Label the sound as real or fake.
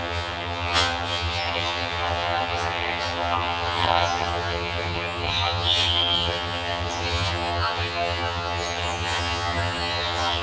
fake